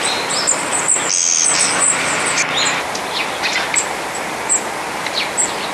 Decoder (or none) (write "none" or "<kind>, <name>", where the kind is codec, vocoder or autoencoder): none